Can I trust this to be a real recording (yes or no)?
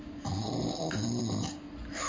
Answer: yes